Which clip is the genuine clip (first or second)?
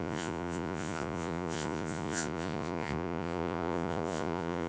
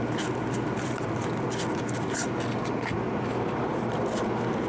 second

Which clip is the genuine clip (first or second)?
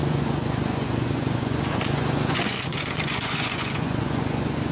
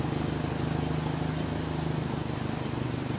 second